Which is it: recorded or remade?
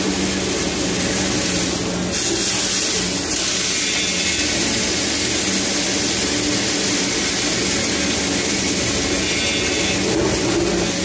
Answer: recorded